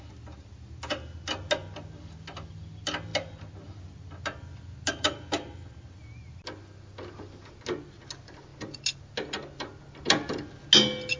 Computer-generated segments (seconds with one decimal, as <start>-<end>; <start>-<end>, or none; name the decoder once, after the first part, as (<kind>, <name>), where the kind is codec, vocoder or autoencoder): none